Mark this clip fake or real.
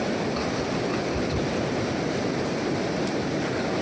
real